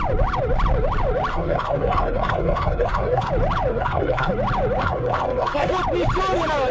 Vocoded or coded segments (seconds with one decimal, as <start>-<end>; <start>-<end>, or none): 1.3-3.3; 3.7-4.3; 4.8-5.7

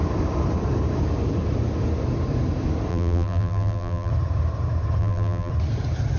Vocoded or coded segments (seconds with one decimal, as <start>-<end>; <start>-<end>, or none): 2.9-4.1; 5.0-5.5

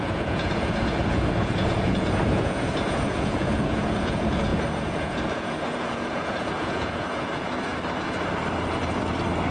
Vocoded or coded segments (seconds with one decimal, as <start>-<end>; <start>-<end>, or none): 0.0-7.7

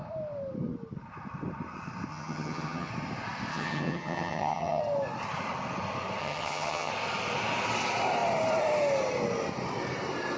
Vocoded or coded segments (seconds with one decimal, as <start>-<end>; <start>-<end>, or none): 2.1-2.9; 3.5-4.8; 6.2-6.9